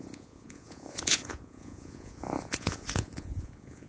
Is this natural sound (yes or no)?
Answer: no